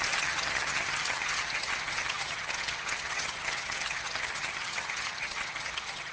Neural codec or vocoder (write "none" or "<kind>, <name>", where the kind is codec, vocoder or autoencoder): vocoder, HiFi-GAN